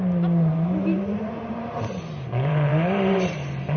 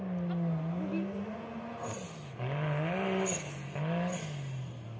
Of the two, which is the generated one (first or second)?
first